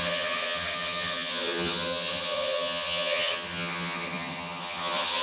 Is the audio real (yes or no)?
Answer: no